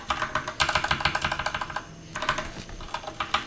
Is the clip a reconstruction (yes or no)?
no